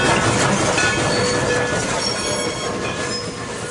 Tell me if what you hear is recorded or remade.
recorded